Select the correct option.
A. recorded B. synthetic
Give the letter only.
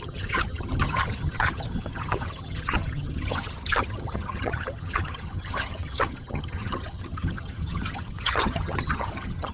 B